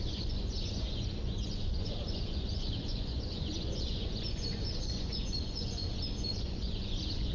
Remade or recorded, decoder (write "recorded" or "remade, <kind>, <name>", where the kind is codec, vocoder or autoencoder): remade, vocoder, Vocos